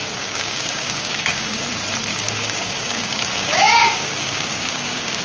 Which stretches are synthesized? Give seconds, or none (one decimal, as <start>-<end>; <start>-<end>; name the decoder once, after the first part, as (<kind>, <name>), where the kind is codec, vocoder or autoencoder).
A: 0.0-1.7 (codec, DAC); 2.1-5.2